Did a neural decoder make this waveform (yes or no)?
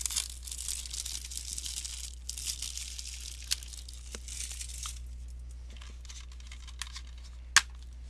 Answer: no